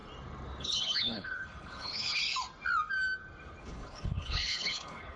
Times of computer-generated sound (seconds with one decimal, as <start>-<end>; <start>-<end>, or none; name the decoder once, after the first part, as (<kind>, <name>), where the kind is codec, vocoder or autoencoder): 0.6-2.2 (codec, HILCodec); 3.6-5.2